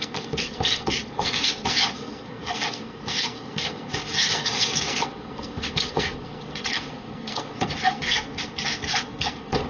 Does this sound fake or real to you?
fake